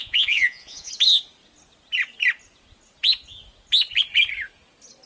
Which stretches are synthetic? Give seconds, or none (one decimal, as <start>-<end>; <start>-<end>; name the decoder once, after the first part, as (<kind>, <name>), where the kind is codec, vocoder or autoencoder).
0.0-0.9 (vocoder, Vocos)